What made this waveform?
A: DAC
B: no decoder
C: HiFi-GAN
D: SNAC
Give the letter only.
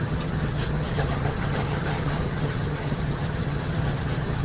C